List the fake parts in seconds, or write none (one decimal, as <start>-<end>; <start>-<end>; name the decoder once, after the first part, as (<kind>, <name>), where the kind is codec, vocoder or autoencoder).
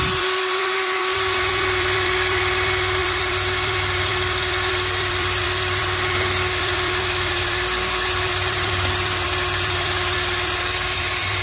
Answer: 0.0-11.4 (vocoder, BigVGAN v2)